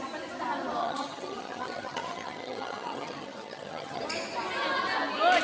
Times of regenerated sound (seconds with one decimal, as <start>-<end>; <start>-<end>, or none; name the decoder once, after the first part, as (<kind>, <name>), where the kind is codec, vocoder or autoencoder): 0.8-4.0 (vocoder, HiFi-GAN)